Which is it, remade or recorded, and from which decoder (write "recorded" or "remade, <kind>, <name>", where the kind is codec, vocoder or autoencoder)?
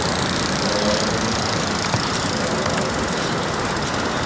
recorded